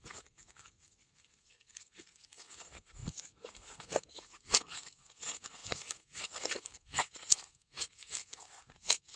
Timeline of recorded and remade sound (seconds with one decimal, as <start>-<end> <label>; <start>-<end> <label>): 0.0-9.2 remade